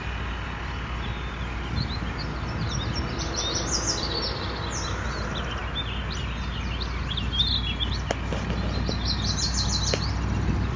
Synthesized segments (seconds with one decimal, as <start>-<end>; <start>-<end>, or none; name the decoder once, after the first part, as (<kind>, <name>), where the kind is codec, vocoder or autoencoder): none